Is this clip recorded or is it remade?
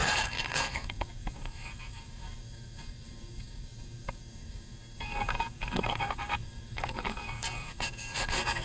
remade